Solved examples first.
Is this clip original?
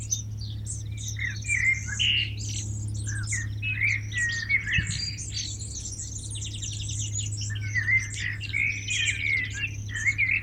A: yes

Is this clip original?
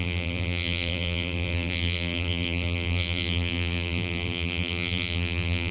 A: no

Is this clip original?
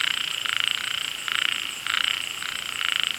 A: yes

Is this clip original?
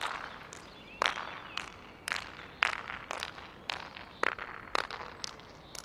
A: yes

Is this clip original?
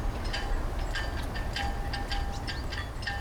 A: yes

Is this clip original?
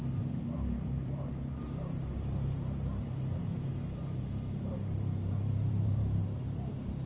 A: no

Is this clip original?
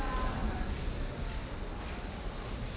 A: yes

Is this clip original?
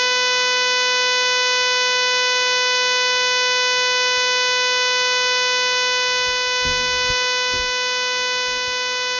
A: yes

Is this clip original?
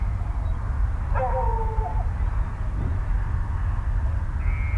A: yes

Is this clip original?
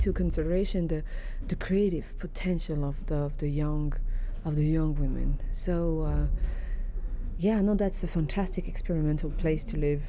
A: yes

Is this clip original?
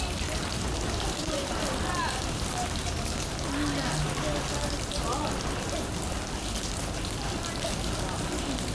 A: yes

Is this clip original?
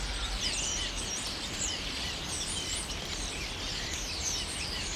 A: no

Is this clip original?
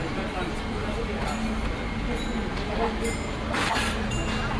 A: yes